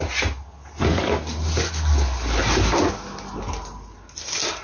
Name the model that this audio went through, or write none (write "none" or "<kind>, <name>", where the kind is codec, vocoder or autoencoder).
none